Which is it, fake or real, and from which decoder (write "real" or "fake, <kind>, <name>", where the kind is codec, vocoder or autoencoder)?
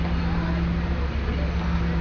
real